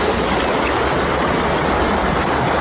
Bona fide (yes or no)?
yes